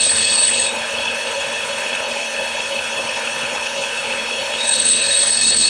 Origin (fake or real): fake